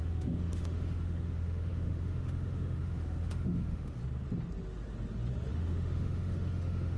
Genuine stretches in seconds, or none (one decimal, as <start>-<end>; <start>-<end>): 4.0-5.5